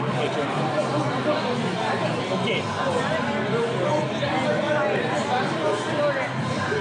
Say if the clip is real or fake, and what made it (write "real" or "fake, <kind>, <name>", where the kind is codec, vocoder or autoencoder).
real